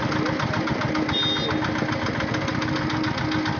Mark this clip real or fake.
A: real